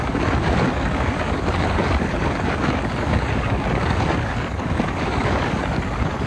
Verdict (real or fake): fake